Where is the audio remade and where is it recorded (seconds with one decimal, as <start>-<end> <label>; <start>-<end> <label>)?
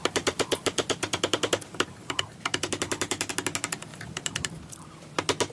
0.0-3.3 remade; 3.3-3.9 recorded; 3.9-4.5 remade; 4.5-5.5 recorded